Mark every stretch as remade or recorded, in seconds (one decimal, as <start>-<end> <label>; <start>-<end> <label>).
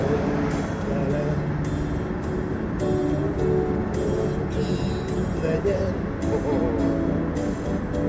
0.0-0.7 recorded; 0.7-1.3 remade; 1.3-8.1 recorded